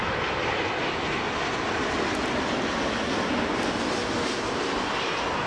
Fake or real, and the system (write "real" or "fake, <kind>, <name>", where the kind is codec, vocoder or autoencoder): real